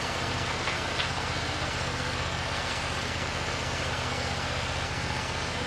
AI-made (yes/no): yes